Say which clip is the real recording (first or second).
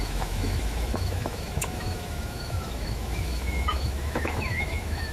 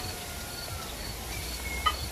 second